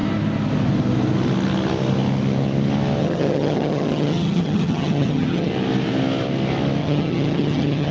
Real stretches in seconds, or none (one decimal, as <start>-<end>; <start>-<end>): 0.0-3.0; 5.5-6.8